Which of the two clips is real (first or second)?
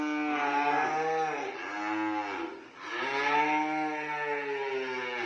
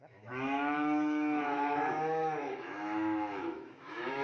first